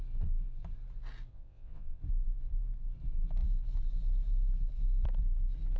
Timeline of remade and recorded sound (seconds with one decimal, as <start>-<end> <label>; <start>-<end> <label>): 0.0-1.3 recorded; 1.3-2.0 remade; 2.0-5.8 recorded